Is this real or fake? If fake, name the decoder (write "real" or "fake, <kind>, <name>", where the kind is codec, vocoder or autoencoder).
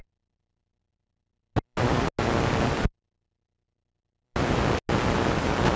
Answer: real